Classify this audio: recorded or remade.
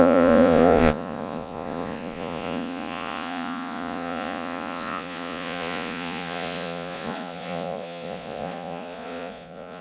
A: remade